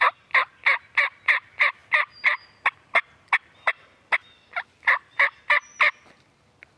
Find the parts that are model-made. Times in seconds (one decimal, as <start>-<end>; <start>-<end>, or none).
none